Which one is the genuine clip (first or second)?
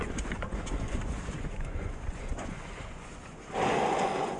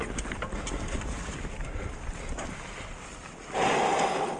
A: second